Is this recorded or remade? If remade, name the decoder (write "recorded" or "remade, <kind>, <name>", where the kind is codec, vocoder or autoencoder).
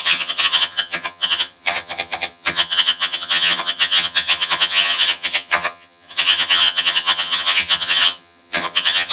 remade, vocoder, HiFi-GAN